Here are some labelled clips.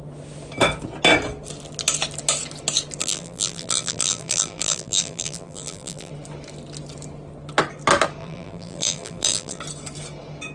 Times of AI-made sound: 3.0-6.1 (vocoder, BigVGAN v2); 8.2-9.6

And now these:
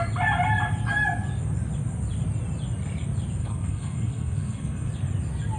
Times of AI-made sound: 3.4-4.9 (codec, SNAC)

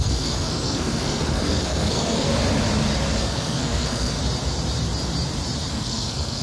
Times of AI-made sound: 0.0-2.3 (codec, SNAC); 3.2-4.2; 5.7-6.4

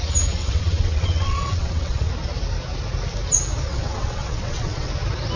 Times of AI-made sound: 0.4-2.1 (vocoder, WaveNeXt); 3.7-4.9

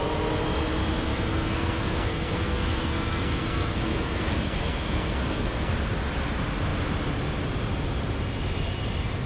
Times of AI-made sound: 1.1-5.7 (codec, SNAC)

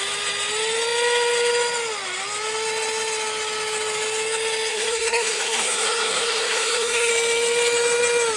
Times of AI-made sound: 4.7-7.1 (codec, SNAC)

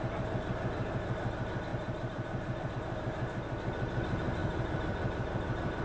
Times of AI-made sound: 1.7-2.7 (vocoder, BigVGAN v2); 4.4-5.8

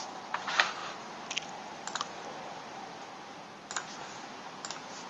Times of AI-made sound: none